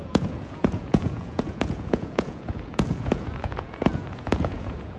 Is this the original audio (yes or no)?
no